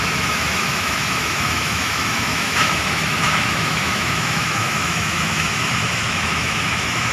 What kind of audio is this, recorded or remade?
remade